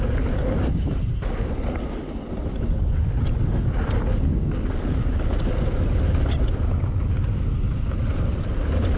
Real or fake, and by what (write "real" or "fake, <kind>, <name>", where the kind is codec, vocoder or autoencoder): real